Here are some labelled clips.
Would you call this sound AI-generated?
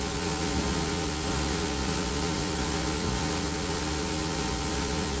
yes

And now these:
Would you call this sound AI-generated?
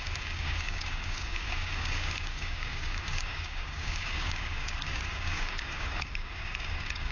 yes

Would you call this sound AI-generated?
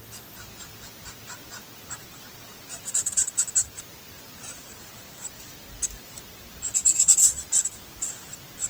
no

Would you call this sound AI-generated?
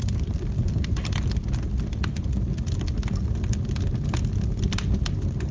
no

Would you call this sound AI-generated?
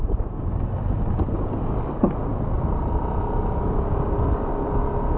no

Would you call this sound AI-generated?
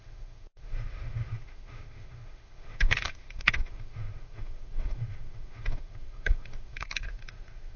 yes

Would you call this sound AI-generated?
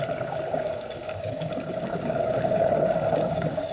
yes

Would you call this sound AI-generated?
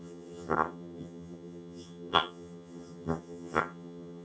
yes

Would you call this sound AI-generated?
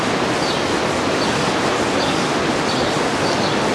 no